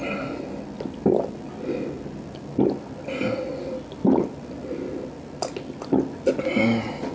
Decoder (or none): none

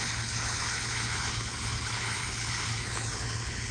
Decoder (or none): codec, HILCodec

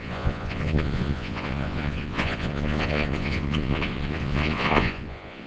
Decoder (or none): vocoder, Vocos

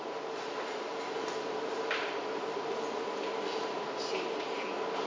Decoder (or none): none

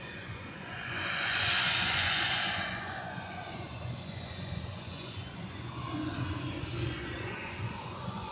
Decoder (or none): vocoder, Vocos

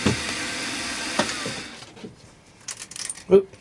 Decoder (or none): vocoder, BigVGAN v2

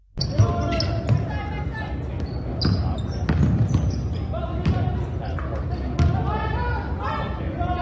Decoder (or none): none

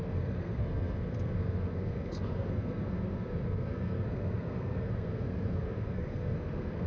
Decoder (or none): codec, SNAC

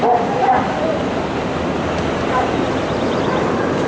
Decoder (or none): none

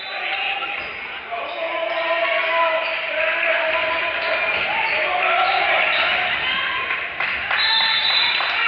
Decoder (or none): none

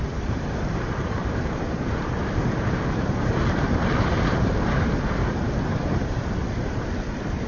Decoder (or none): vocoder, BigVGAN v2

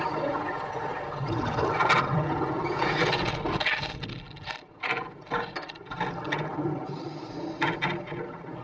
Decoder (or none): none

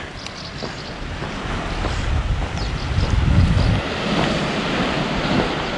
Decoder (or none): none